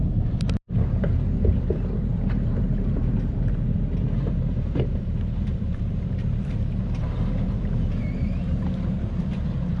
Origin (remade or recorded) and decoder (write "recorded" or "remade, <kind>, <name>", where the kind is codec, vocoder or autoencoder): remade, vocoder, BigVGAN v2